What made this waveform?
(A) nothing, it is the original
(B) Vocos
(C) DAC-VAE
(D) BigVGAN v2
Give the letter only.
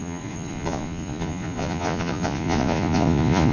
B